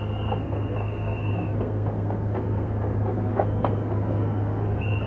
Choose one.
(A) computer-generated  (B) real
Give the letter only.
A